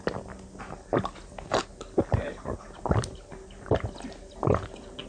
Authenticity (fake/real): real